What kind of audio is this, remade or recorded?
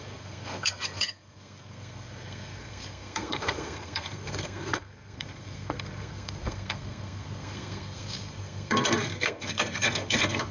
remade